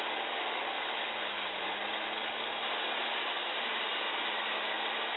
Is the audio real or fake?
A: real